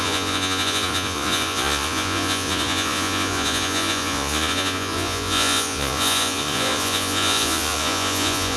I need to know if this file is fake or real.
fake